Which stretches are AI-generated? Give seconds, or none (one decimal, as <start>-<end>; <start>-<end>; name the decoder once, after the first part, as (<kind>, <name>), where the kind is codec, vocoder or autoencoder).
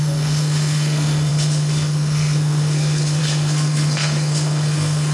0.0-5.1 (codec, SNAC)